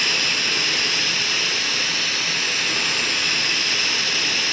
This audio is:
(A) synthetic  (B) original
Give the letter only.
B